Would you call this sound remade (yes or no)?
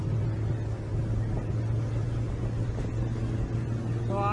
no